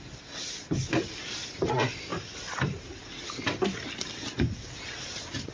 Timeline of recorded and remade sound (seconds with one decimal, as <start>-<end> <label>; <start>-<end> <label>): 0.0-2.1 recorded; 2.1-3.9 remade; 3.9-5.5 recorded